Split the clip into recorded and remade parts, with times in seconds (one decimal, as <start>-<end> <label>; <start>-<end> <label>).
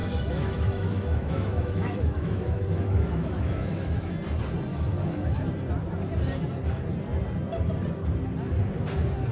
0.0-4.1 remade; 4.1-4.7 recorded; 4.7-5.4 remade; 5.4-9.3 recorded